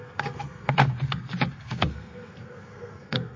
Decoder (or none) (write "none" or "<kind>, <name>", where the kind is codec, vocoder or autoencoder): codec, SNAC